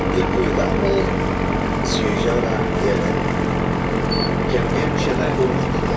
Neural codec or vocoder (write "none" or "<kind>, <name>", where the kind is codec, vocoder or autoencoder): none